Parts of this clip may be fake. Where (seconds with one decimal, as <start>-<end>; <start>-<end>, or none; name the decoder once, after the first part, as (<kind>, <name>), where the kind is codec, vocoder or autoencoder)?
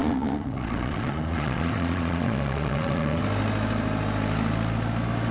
0.0-3.2 (vocoder, Vocos)